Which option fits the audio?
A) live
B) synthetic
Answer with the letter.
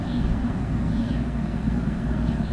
B